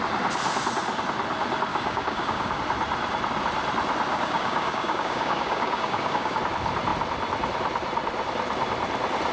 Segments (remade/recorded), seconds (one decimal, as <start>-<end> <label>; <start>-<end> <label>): 0.0-1.7 recorded; 1.7-2.6 remade; 2.6-4.1 recorded; 4.1-6.4 remade; 6.4-9.3 recorded

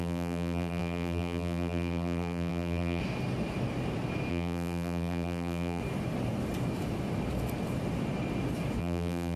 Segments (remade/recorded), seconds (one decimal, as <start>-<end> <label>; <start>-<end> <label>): 0.0-3.0 remade; 3.0-4.3 recorded; 4.3-5.8 remade; 5.8-8.8 recorded; 8.8-9.4 remade

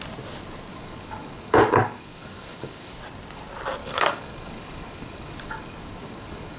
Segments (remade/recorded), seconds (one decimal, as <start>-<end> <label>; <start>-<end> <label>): 0.0-0.7 recorded; 0.7-2.9 remade; 2.9-3.8 recorded; 3.8-6.6 remade

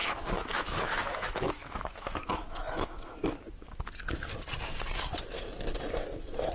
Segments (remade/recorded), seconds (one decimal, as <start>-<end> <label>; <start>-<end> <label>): 0.0-3.9 remade; 3.9-6.5 recorded